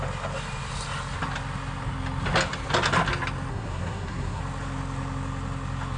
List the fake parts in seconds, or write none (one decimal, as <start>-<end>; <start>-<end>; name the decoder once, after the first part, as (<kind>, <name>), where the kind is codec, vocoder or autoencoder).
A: 3.5-4.4 (codec, SNAC)